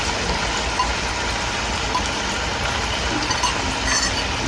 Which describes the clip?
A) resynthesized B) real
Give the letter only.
B